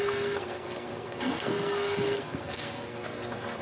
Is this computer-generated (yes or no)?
yes